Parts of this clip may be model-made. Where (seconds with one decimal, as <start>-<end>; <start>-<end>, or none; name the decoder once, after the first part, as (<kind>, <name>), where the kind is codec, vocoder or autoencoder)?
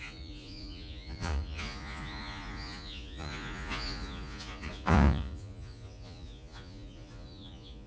0.0-7.9 (vocoder, Vocos)